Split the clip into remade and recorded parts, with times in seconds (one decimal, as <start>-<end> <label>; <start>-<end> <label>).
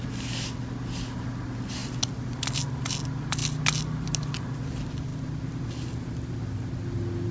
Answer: 0.0-7.3 recorded